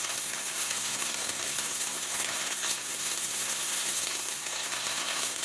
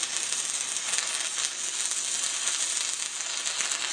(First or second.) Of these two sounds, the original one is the second